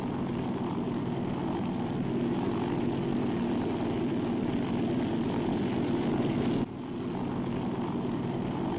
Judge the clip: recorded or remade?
recorded